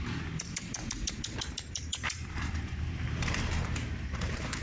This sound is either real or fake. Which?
fake